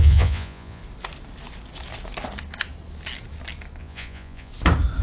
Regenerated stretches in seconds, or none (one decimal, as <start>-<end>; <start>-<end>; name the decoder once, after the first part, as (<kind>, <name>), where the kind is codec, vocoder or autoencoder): 0.0-0.8 (vocoder, Vocos); 3.8-4.5